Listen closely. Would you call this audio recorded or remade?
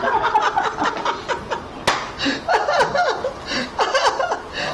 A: recorded